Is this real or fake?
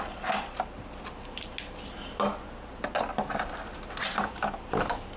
real